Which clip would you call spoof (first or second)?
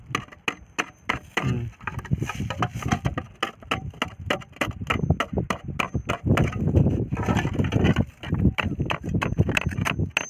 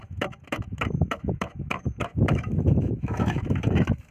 second